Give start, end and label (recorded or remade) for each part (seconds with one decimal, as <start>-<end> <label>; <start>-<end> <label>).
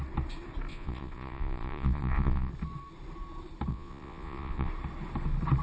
0.0-0.7 recorded; 0.7-2.5 remade; 2.5-3.7 recorded; 3.7-4.7 remade; 4.7-5.6 recorded